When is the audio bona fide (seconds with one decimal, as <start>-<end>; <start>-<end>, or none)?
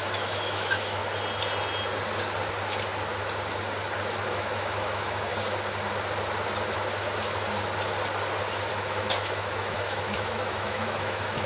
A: 1.0-4.3; 5.3-8.7